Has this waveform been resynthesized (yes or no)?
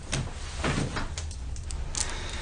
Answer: no